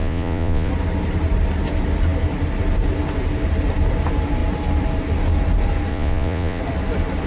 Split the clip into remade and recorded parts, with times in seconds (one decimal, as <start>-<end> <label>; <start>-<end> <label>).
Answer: 0.0-0.7 remade; 0.7-5.9 recorded; 5.9-6.6 remade; 6.6-7.3 recorded